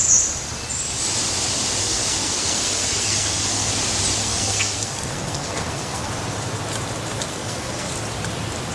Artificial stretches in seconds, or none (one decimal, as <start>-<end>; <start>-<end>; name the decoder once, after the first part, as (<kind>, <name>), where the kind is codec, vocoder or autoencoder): 1.8-3.7 (codec, SNAC); 4.2-6.1; 7.3-7.9